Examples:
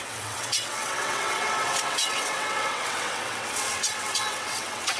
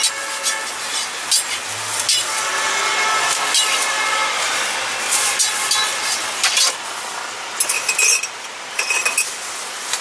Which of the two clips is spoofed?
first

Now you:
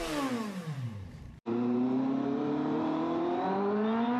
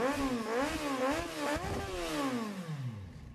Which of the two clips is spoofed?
first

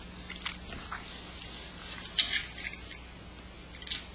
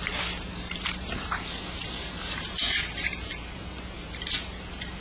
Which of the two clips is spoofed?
second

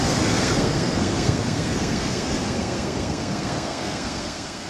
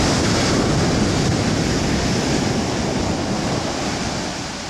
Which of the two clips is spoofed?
first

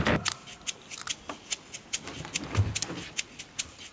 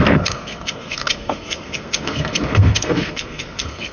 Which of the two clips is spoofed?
second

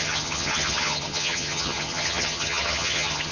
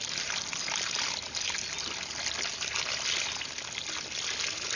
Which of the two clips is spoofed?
first